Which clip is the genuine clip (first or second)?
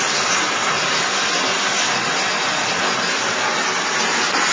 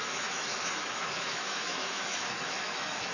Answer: first